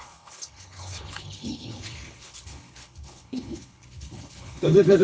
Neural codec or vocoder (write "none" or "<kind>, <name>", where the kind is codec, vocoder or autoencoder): codec, HILCodec